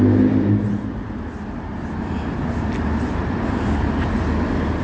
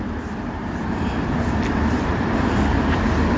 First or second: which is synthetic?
second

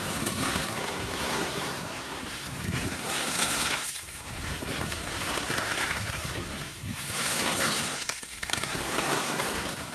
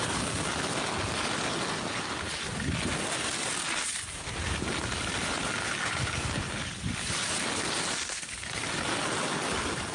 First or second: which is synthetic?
first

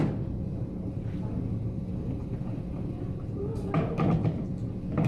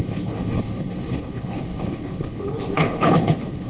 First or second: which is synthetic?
second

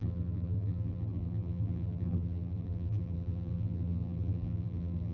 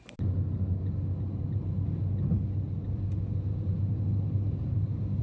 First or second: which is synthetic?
first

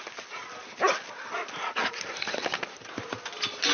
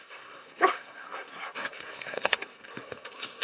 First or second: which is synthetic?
second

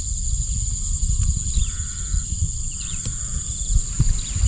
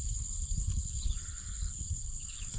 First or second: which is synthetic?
second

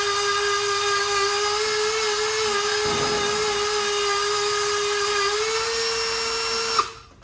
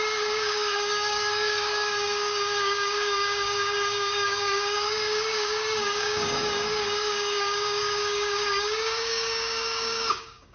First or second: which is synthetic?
second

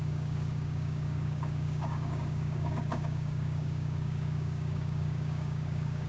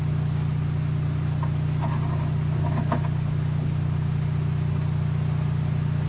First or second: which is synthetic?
first